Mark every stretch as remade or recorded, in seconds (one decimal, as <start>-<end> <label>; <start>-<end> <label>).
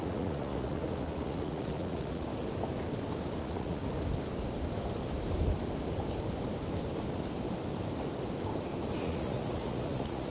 0.0-2.3 remade; 2.3-3.4 recorded; 3.4-3.8 remade; 3.8-9.0 recorded; 9.0-10.3 remade